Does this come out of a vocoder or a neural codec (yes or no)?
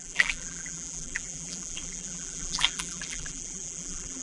yes